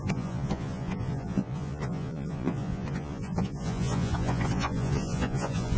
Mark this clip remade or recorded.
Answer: remade